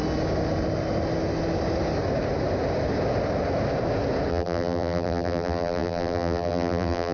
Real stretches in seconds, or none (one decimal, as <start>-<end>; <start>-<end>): 0.0-4.3